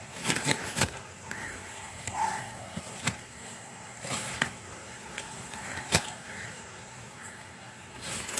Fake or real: fake